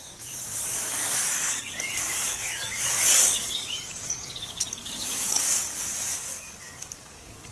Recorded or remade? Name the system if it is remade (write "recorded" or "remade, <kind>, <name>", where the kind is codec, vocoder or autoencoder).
remade, codec, DAC